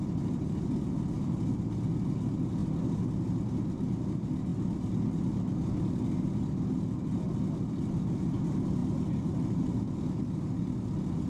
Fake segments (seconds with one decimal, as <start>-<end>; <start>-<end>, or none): none